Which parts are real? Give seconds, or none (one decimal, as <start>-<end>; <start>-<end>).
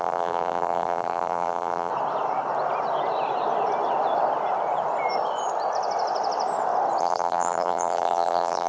1.9-7.0